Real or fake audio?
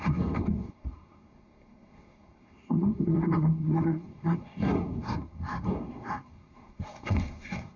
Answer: fake